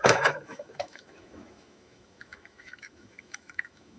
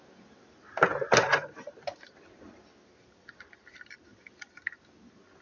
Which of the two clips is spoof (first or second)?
first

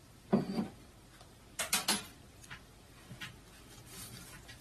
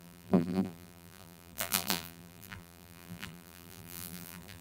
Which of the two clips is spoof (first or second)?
second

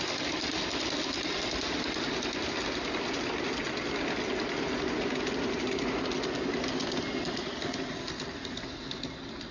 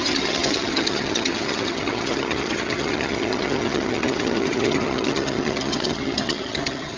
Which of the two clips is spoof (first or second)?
second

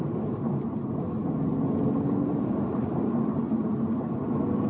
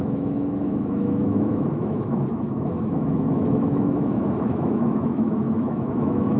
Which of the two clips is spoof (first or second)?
second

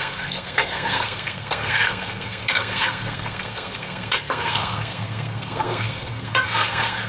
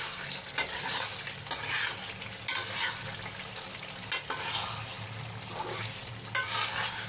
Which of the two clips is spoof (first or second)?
first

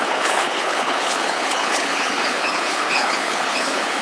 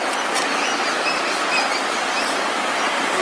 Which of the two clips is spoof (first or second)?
first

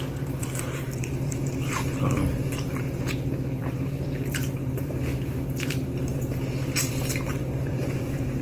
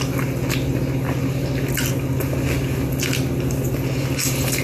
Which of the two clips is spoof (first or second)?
first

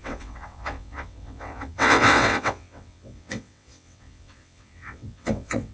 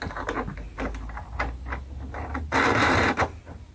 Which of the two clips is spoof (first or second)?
first